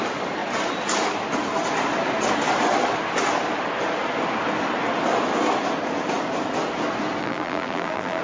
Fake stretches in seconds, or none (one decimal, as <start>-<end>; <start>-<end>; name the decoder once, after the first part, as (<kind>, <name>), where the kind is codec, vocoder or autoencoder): 7.2-8.2 (vocoder, BigVGAN v2)